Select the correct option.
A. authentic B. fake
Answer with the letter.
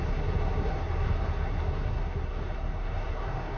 B